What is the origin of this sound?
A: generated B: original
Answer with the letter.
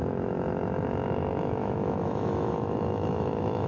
A